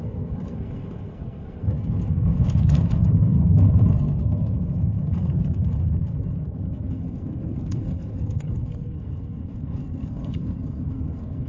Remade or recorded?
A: remade